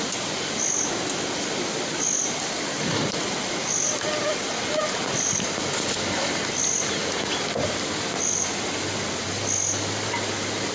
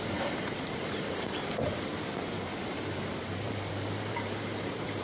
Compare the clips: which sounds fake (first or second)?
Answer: second